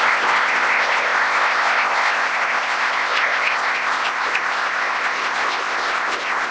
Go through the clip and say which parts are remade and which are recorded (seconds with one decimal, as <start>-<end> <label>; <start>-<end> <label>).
0.0-6.5 remade